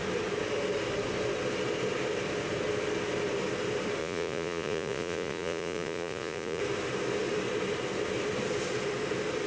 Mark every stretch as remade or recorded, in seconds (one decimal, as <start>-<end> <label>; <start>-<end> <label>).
0.0-4.0 recorded; 4.0-6.6 remade; 6.6-9.5 recorded